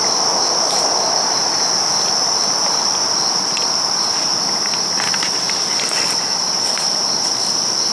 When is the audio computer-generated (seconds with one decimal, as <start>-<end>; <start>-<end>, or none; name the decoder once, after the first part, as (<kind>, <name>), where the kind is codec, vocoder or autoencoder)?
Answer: none